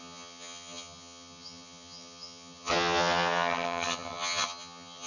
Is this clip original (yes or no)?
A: no